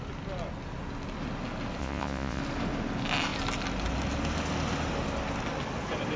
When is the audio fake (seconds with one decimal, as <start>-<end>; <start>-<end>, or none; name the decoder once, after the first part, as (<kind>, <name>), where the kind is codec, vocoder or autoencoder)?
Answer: 1.8-2.4 (vocoder, Vocos)